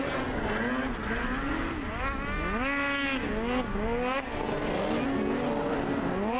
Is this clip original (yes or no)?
yes